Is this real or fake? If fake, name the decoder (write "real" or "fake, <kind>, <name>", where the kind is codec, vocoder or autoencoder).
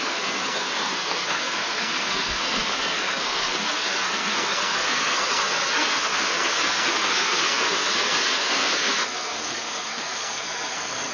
fake, codec, SNAC